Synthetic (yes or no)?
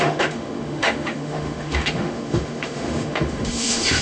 yes